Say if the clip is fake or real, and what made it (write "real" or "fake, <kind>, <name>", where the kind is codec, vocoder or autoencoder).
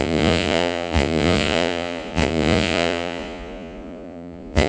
fake, vocoder, Vocos